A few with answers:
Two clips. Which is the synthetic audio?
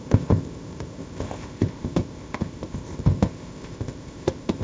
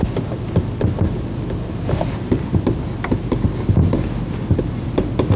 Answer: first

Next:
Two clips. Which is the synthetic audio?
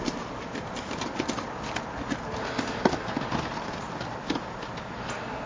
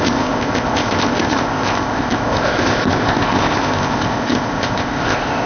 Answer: second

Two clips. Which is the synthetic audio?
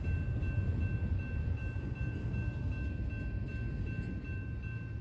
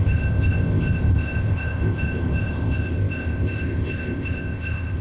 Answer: second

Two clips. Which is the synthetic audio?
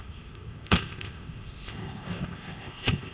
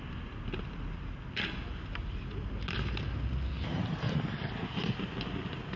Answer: first